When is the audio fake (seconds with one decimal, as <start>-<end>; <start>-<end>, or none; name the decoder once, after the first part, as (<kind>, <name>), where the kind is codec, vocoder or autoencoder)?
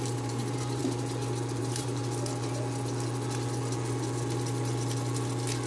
0.0-0.8 (vocoder, BigVGAN v2); 1.6-2.0